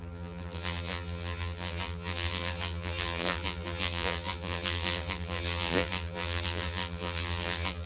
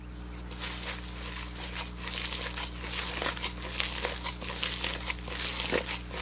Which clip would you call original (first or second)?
second